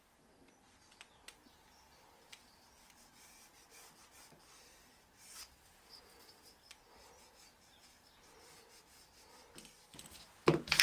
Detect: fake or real real